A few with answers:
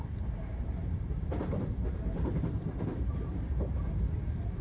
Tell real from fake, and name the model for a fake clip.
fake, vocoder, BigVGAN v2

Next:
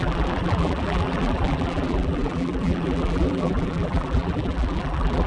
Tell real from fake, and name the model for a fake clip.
fake, vocoder, BigVGAN v2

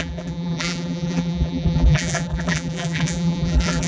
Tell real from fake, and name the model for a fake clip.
fake, vocoder, BigVGAN v2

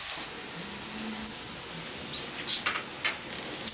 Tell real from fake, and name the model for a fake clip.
real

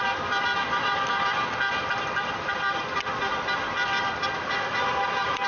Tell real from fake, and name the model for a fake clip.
fake, vocoder, BigVGAN v2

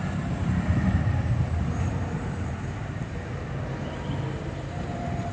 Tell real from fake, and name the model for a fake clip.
fake, vocoder, BigVGAN v2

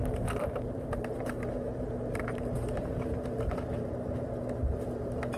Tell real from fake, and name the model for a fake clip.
fake, vocoder, BigVGAN v2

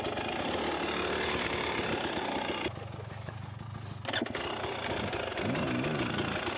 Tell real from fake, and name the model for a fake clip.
real